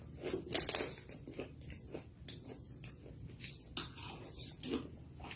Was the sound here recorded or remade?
recorded